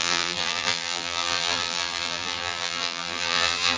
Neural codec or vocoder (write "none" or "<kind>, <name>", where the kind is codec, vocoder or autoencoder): vocoder, BigVGAN v2